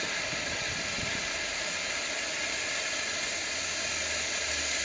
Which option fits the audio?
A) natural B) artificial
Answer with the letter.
A